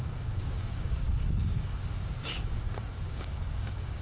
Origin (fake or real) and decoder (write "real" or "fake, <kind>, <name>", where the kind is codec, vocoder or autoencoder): fake, codec, DAC